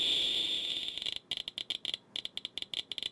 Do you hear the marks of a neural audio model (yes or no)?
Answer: no